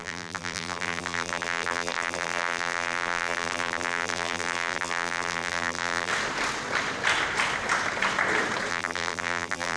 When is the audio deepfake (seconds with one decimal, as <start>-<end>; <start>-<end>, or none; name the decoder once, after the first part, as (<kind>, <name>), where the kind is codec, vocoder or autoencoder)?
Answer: 0.0-6.1 (vocoder, BigVGAN v2); 8.7-9.8